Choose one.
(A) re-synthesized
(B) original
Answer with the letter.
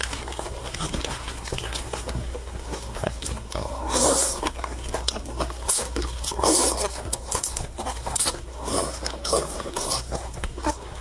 A